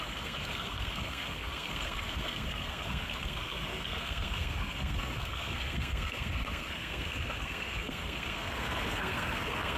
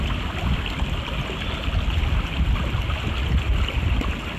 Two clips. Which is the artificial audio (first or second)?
first